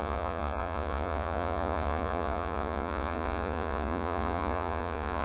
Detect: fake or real fake